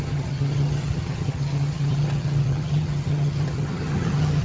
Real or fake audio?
fake